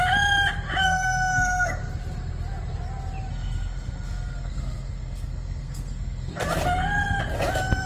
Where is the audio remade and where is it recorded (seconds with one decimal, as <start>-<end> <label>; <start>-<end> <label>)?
0.0-0.8 recorded; 0.8-1.8 remade; 1.8-3.3 recorded; 3.3-6.3 remade; 6.3-7.9 recorded